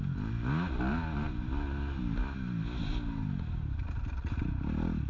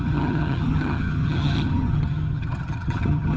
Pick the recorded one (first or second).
first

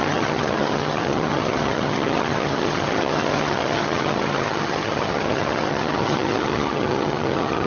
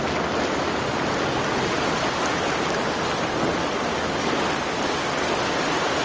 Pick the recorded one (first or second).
second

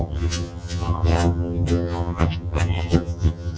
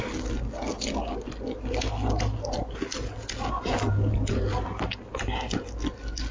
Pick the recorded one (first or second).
second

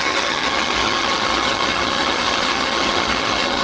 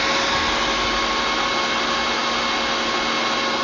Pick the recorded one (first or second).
second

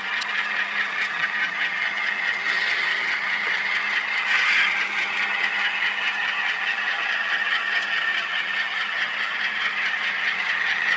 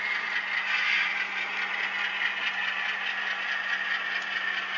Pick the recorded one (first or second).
second